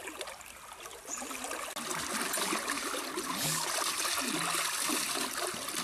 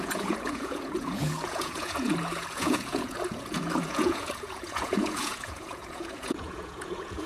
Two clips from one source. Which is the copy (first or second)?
second